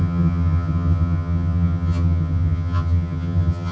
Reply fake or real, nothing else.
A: fake